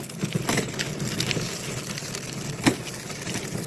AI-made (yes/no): no